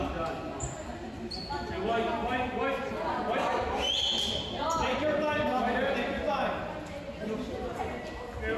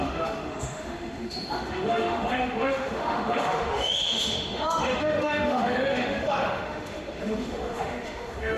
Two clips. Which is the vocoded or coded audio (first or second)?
second